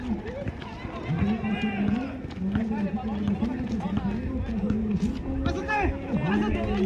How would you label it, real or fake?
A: real